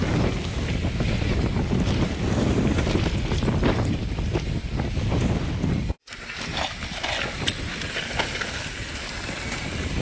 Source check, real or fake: real